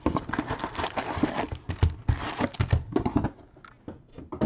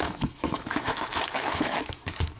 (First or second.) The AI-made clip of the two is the second